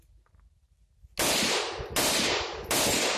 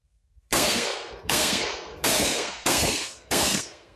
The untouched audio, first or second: first